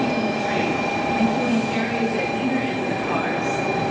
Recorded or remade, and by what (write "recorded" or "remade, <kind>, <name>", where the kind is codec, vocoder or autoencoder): recorded